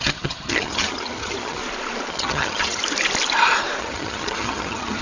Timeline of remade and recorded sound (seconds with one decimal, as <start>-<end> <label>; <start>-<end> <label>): 0.0-1.6 remade; 1.6-2.1 recorded; 2.1-2.8 remade; 2.8-3.8 recorded; 3.8-5.0 remade

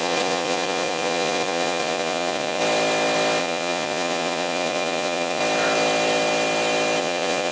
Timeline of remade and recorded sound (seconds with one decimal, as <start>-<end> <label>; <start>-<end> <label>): 0.0-2.6 remade; 2.6-3.4 recorded; 3.4-5.4 remade; 5.4-7.0 recorded; 7.0-7.5 remade

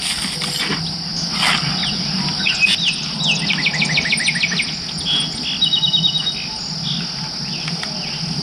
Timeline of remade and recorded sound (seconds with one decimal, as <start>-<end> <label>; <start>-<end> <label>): 0.0-8.4 recorded

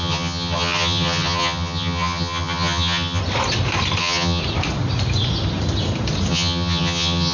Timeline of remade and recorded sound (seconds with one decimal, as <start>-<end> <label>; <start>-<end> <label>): 0.0-3.2 remade; 3.2-4.0 recorded; 4.0-4.4 remade; 4.4-6.3 recorded; 6.3-7.3 remade